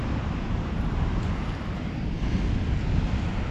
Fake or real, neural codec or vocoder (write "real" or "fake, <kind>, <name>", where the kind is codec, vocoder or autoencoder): real